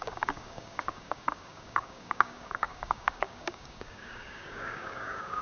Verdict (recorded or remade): remade